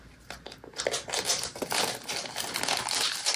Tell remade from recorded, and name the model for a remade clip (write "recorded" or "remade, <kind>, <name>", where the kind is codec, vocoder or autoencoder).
recorded